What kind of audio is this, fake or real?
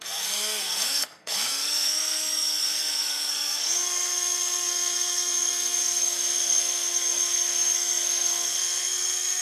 fake